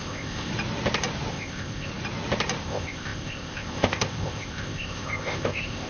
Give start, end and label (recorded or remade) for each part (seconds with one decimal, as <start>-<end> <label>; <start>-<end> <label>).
0.0-0.5 remade; 0.5-1.3 recorded; 1.3-1.9 remade; 1.9-2.6 recorded; 2.6-5.9 remade